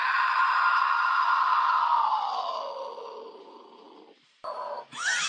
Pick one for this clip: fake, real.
real